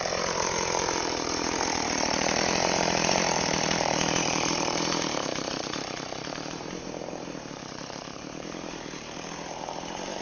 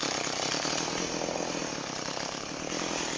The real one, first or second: second